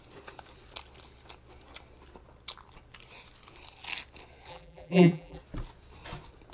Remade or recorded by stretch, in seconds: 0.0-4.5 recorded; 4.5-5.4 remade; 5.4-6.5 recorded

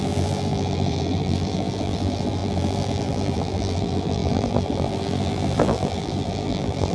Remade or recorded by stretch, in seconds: 0.0-6.9 remade

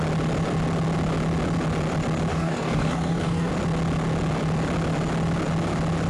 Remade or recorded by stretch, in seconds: 0.0-2.3 recorded; 2.3-3.5 remade; 3.5-6.1 recorded

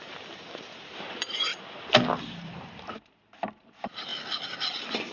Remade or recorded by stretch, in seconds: 0.0-1.5 remade; 1.5-2.2 recorded; 2.2-4.1 remade; 4.1-5.1 recorded

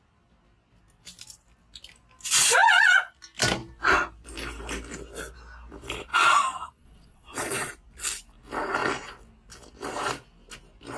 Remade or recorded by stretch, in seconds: 0.0-2.6 recorded; 2.6-3.1 remade; 3.1-6.1 recorded; 6.1-7.7 remade; 7.7-11.0 recorded

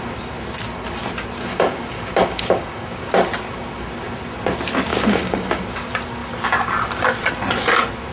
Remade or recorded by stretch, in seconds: 0.0-1.5 recorded; 1.5-3.1 remade; 3.1-4.9 recorded; 4.9-5.6 remade; 5.6-8.1 recorded

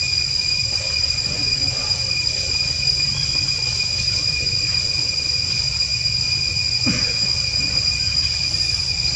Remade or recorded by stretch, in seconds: 0.0-3.7 remade; 3.7-4.2 recorded; 4.2-9.2 remade

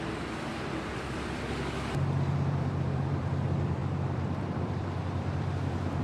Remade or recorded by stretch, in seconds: 0.0-6.0 remade